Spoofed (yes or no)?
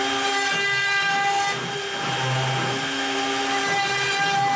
no